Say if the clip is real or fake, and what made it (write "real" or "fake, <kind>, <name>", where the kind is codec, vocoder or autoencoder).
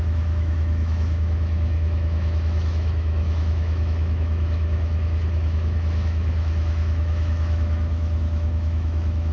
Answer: fake, autoencoder, DAC-VAE